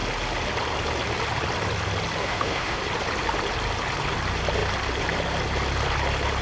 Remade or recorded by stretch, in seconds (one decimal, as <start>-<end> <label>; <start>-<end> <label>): 0.0-2.2 recorded; 2.2-2.8 remade; 2.8-6.4 recorded

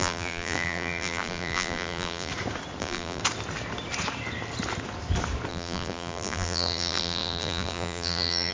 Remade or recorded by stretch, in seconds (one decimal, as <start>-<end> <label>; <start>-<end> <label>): 0.0-2.3 remade; 2.3-2.8 recorded; 2.8-3.2 remade; 3.2-5.5 recorded; 5.5-8.5 remade

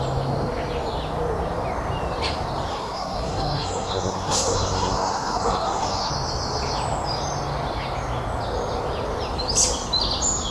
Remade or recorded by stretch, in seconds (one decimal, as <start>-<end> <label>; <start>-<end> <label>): 0.0-2.7 recorded; 2.7-6.1 remade; 6.1-10.5 recorded

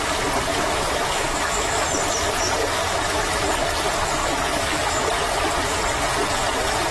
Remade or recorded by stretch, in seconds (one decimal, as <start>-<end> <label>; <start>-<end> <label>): 0.0-0.5 recorded; 0.5-1.8 remade; 1.8-2.6 recorded; 2.6-3.4 remade; 3.4-4.2 recorded; 4.2-5.0 remade; 5.0-6.9 recorded